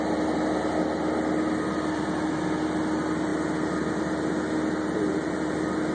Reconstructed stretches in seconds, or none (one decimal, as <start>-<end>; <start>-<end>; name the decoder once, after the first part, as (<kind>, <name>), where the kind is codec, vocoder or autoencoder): none